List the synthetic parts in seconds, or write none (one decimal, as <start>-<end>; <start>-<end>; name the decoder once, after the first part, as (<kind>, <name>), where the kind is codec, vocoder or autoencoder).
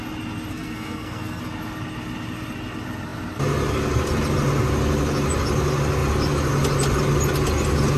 0.5-1.4 (codec, SNAC)